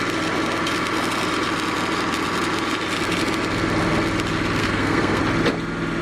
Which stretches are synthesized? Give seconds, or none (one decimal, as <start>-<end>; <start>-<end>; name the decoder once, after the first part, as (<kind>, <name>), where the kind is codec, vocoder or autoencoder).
4.6-5.2 (codec, SNAC)